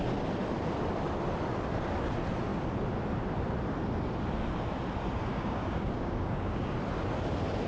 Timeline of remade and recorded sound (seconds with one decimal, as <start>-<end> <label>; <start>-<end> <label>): 0.0-5.3 recorded; 5.3-6.7 remade; 6.7-7.7 recorded